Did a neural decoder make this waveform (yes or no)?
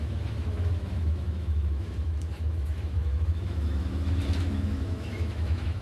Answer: yes